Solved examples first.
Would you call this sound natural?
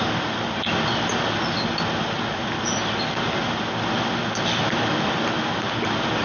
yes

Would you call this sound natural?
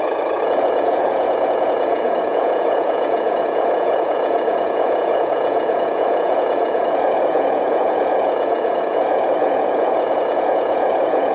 no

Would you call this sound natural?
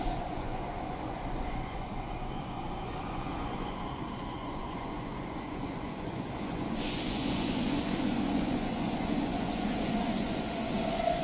no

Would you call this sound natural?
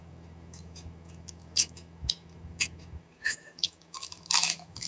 no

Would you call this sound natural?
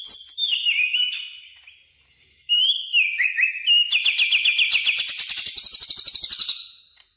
yes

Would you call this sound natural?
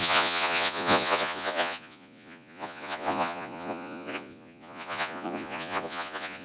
no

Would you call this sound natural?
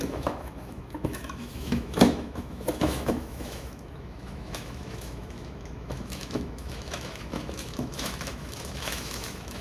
no